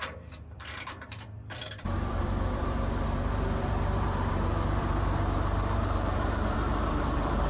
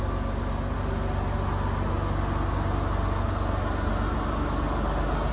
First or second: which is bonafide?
second